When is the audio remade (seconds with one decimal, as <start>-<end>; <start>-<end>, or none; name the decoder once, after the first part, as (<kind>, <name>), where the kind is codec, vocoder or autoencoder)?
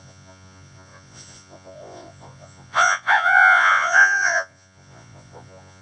0.0-5.8 (vocoder, Vocos)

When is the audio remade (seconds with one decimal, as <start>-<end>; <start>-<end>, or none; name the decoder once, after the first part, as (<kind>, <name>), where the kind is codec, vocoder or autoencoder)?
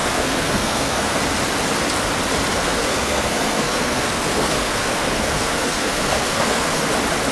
0.0-1.2 (codec, SNAC); 2.6-6.8